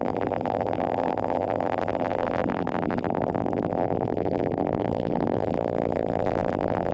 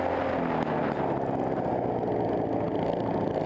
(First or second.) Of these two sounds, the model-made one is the first